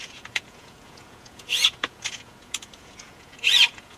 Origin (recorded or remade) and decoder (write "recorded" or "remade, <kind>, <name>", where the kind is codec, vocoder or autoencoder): remade, vocoder, Vocos